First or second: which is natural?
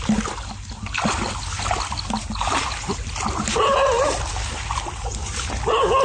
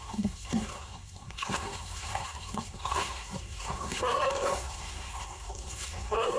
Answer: first